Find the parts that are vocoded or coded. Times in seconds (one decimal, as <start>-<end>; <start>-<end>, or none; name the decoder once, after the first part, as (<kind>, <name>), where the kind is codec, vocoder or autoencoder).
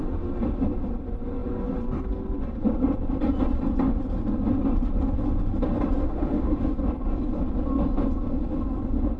6.0-6.6 (autoencoder, DAC-VAE)